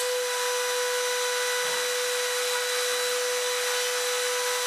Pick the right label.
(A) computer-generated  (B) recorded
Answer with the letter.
B